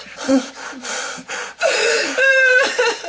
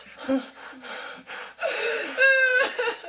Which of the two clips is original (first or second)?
second